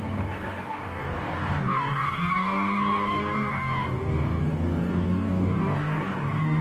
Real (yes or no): no